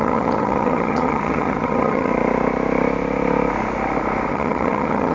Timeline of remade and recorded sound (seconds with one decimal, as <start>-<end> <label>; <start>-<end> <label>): 0.0-2.1 remade; 2.1-4.3 recorded; 4.3-5.1 remade